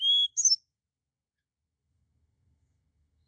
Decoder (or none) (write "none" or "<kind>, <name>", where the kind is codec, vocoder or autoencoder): autoencoder, DAC-VAE